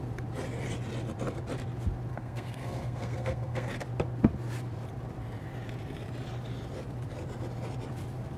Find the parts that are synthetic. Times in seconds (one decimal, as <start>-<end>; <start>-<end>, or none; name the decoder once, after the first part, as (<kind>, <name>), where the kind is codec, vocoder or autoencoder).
2.1-3.7 (codec, SNAC)

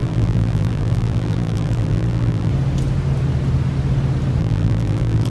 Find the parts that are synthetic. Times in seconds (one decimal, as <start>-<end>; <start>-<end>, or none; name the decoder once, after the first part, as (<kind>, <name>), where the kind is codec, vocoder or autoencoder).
0.0-2.5 (vocoder, BigVGAN v2); 4.4-5.3

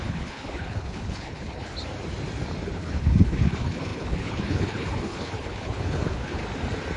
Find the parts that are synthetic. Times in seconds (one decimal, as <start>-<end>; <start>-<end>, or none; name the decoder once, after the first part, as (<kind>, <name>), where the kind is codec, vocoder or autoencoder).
0.0-1.7 (codec, HILCodec); 2.7-6.4

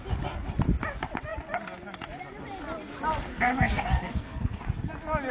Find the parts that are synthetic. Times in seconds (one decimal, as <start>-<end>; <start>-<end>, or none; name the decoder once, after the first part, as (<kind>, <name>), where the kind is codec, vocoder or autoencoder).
3.3-4.6 (codec, SNAC)

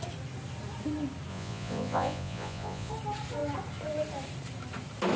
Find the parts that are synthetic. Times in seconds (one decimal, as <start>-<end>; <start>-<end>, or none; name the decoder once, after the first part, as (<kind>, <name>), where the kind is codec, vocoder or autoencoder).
1.3-2.9 (vocoder, Vocos)